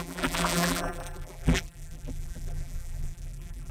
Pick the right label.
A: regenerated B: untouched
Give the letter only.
A